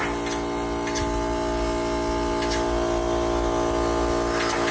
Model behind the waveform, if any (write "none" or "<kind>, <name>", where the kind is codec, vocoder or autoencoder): none